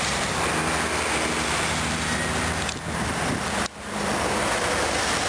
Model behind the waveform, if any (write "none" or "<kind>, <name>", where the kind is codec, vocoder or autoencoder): none